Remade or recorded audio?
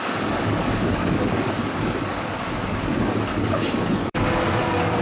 remade